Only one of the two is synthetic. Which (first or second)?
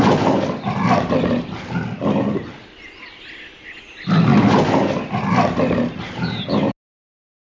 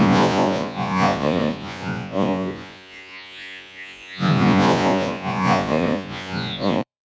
second